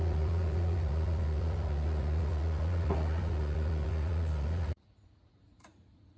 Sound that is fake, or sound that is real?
fake